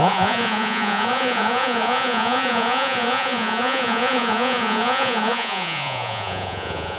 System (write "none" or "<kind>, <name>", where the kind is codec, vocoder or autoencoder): vocoder, Vocos